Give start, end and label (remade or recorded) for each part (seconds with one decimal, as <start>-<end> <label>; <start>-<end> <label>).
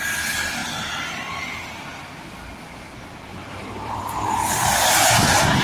0.0-3.3 recorded; 3.3-5.6 remade